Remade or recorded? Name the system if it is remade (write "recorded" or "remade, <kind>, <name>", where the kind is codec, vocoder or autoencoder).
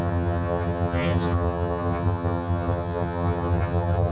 remade, vocoder, HiFi-GAN